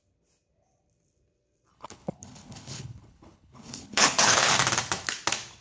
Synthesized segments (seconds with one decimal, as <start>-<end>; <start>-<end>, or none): 1.7-4.5